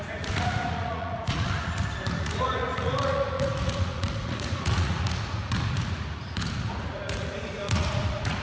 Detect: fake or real fake